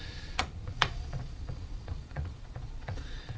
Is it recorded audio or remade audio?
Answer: remade